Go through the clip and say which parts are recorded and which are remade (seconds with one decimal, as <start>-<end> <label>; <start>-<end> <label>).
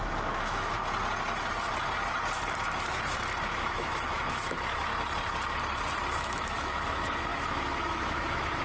0.0-0.8 remade; 0.8-3.4 recorded; 3.4-4.9 remade; 4.9-6.1 recorded; 6.1-8.6 remade